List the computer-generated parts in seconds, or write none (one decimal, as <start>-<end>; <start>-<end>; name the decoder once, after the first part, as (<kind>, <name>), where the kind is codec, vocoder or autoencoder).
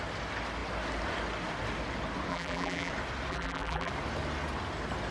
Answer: 2.3-2.9 (vocoder, BigVGAN v2); 3.3-3.9